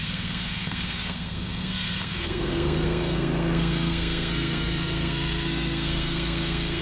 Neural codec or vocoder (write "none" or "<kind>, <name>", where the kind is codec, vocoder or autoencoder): codec, SNAC